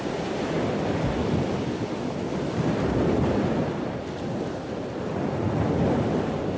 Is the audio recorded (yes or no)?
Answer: yes